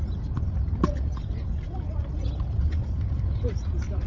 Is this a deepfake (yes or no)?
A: no